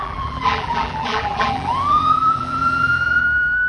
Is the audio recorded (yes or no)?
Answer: no